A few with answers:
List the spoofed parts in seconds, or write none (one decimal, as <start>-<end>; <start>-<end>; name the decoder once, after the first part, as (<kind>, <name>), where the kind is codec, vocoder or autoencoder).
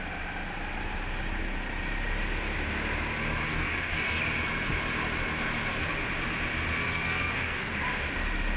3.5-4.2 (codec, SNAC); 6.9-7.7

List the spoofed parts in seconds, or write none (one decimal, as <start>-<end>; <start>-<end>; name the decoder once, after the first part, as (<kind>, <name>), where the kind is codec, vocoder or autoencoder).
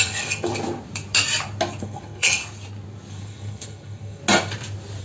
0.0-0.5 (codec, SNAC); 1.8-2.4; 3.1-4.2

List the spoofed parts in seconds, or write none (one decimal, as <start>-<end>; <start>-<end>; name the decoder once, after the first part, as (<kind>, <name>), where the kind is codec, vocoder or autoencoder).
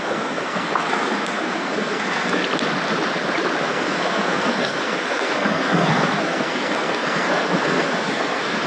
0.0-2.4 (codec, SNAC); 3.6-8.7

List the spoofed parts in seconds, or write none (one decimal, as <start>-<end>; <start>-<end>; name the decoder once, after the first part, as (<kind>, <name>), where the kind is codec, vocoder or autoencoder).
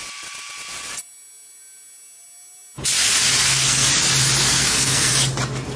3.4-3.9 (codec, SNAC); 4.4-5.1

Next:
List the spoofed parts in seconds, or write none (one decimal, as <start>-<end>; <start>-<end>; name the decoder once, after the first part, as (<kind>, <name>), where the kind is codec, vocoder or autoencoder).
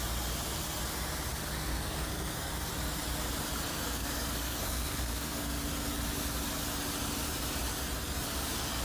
1.3-2.7 (codec, SNAC); 3.7-5.6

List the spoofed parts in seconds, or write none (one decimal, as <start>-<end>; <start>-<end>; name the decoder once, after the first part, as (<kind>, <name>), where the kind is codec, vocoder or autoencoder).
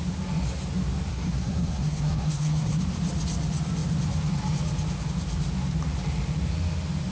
1.1-2.8 (codec, SNAC)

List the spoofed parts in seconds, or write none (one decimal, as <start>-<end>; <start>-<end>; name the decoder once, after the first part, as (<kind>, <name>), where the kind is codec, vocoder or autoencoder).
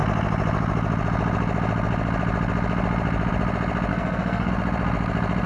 3.9-4.5 (codec, SNAC)